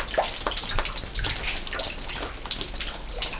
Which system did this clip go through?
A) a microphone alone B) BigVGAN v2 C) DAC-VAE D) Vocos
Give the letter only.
A